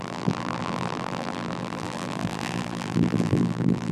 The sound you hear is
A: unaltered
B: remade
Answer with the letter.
B